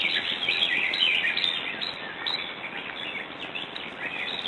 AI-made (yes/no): no